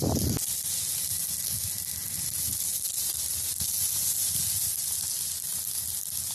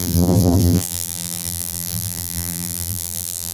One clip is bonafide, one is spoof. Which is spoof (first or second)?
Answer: second